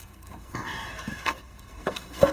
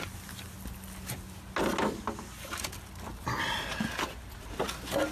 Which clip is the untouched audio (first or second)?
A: second